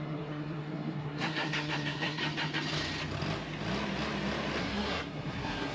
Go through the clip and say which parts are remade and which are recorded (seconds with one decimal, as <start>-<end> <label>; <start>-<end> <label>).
0.0-2.2 remade; 2.2-4.6 recorded; 4.6-5.7 remade